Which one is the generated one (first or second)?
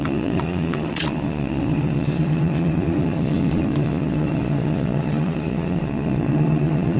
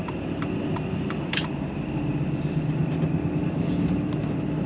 first